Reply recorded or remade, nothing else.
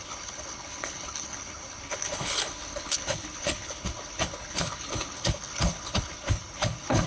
remade